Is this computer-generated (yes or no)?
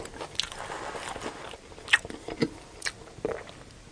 no